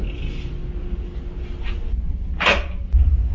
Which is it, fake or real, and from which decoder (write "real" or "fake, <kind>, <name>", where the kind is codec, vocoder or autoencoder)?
real